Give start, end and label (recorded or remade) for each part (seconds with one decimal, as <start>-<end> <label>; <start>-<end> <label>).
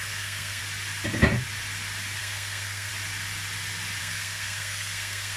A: 0.0-0.6 remade; 0.6-2.2 recorded; 2.2-2.9 remade; 2.9-4.0 recorded; 4.0-5.4 remade